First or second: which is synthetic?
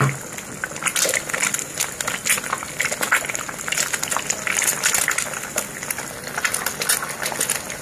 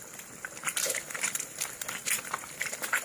second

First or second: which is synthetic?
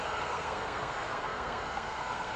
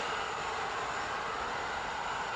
first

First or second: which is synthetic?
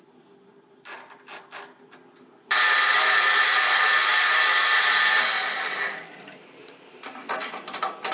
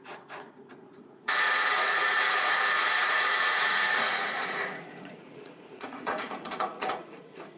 second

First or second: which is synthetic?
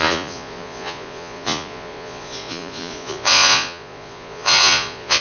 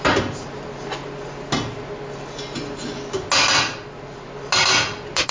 first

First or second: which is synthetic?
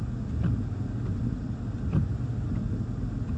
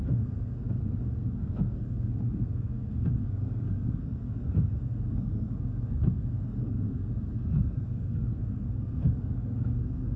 second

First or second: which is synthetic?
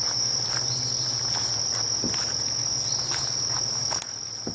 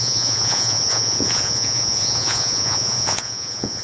second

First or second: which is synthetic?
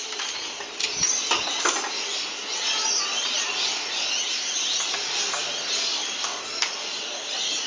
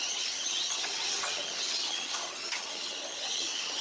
second